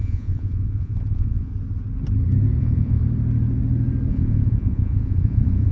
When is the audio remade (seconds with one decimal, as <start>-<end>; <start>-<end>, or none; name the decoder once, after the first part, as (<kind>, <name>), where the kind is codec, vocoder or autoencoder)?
0.0-1.5 (vocoder, Vocos); 2.6-3.0; 4.1-5.7